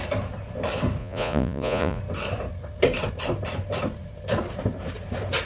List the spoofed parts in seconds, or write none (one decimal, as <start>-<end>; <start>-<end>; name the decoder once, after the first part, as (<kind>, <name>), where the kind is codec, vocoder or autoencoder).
1.0-2.0 (vocoder, Vocos)